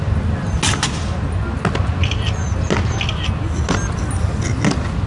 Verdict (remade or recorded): recorded